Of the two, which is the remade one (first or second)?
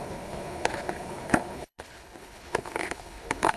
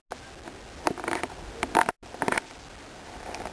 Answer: first